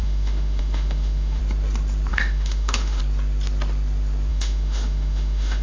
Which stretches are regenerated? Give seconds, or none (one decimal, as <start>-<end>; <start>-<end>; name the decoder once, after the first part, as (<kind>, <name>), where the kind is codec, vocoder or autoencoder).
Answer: 0.0-1.4 (autoencoder, DAC-VAE); 2.1-3.0; 4.3-5.6